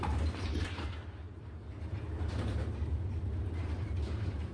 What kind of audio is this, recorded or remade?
remade